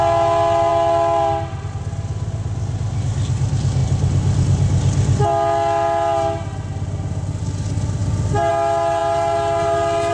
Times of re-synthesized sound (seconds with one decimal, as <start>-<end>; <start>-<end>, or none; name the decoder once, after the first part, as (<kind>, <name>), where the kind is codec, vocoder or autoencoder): none